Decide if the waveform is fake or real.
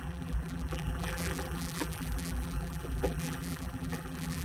fake